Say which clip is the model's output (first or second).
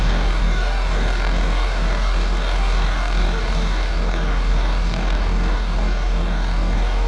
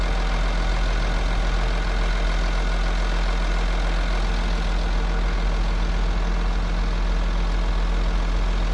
first